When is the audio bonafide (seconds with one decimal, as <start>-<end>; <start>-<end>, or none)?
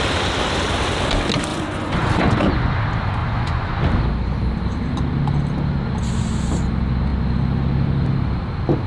0.0-1.5; 2.8-3.2; 3.8-8.9